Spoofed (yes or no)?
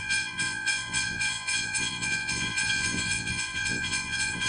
yes